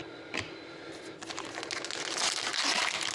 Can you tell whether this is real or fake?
real